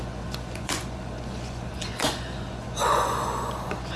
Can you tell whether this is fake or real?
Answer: fake